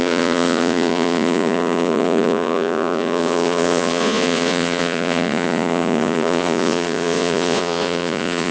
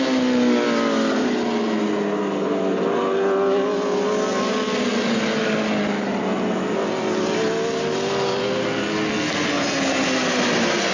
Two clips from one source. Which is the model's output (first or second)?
first